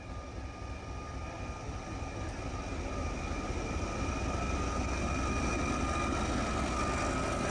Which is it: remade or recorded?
recorded